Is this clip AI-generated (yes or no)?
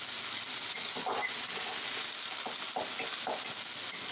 no